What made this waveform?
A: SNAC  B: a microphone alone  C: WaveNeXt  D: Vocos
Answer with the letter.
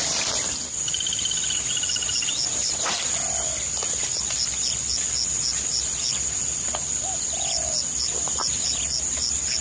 B